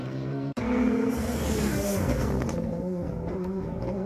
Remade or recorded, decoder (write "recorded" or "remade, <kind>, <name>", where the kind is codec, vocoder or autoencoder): remade, codec, SNAC